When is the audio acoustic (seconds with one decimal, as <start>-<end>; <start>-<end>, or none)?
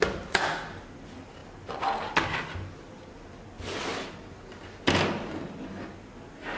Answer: 0.0-6.6